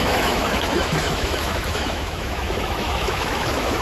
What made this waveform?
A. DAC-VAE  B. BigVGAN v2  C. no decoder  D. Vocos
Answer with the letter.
A